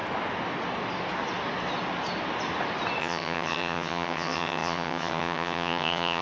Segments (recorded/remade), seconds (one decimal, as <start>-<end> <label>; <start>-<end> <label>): 0.0-3.0 recorded; 3.0-6.2 remade